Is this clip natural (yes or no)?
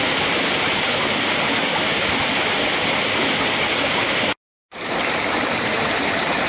yes